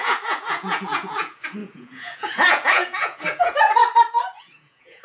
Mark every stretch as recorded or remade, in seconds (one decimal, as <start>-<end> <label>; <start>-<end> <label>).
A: 0.0-3.8 remade; 3.8-4.4 recorded; 4.4-5.0 remade